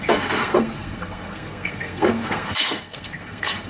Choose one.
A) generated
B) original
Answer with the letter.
A